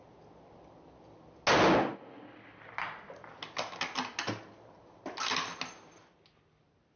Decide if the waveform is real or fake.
real